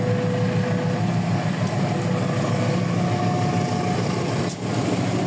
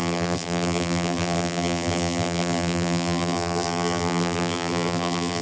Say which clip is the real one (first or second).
first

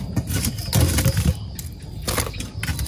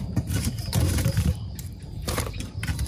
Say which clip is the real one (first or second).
first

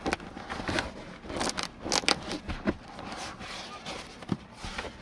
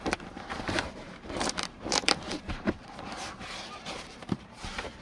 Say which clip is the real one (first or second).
first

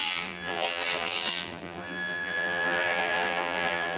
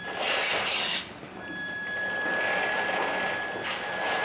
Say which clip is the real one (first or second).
second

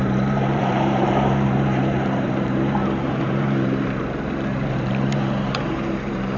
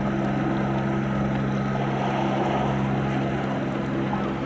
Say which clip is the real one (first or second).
second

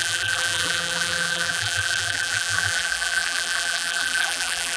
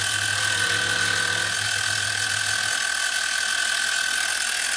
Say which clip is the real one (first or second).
second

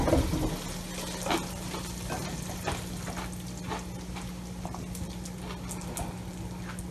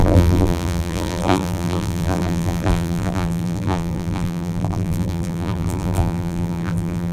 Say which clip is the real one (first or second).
first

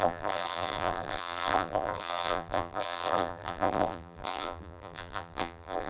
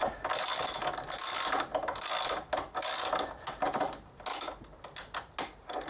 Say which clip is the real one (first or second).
second